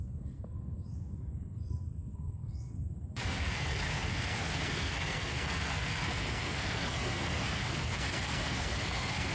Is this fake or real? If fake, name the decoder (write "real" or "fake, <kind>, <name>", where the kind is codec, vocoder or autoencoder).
fake, codec, SNAC